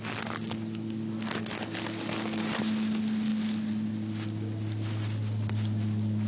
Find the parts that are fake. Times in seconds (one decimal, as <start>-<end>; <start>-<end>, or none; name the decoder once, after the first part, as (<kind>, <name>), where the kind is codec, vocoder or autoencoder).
none